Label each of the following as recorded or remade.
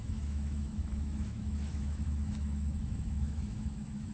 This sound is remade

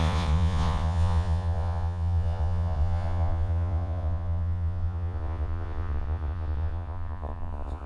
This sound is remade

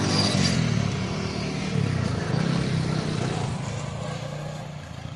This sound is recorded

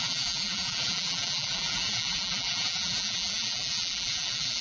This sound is remade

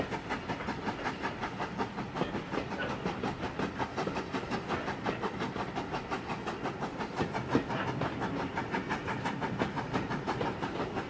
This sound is recorded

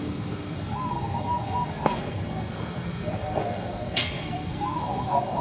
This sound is remade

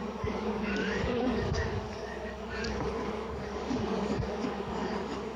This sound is remade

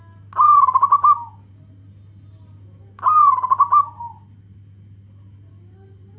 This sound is recorded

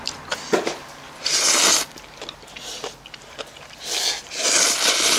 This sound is recorded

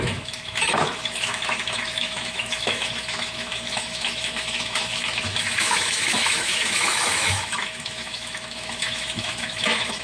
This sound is remade